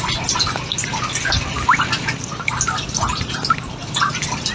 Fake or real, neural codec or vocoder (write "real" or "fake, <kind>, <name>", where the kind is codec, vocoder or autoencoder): real